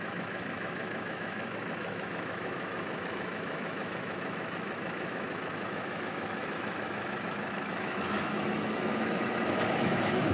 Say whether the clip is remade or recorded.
remade